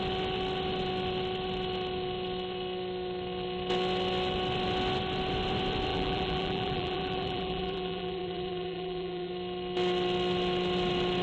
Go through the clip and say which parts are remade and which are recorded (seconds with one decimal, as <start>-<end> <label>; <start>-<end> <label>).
0.0-5.9 recorded; 5.9-9.3 remade; 9.3-11.2 recorded